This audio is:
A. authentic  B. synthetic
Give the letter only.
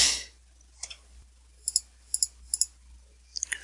A